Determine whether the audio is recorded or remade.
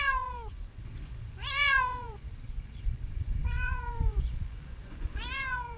remade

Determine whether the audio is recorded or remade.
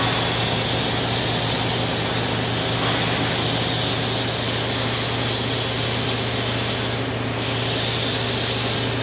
recorded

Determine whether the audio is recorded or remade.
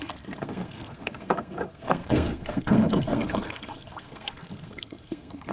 remade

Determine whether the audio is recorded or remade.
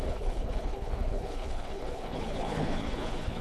remade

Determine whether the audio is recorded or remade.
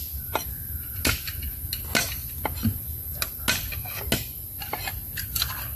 recorded